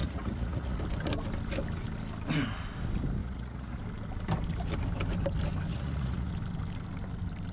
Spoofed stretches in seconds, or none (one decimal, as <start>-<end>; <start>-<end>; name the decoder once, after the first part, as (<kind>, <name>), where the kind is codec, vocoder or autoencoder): 0.0-0.8 (vocoder, Vocos); 3.2-3.8; 5.7-6.3